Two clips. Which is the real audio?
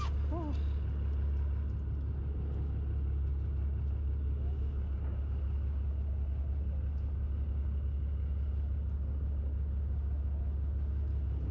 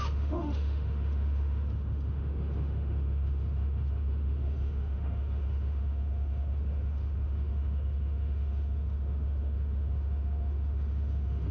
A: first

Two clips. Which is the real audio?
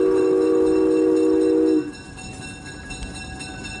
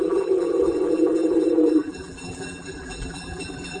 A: first